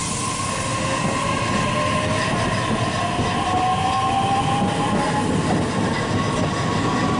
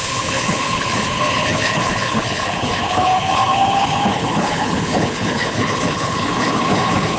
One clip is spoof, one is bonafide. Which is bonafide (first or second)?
first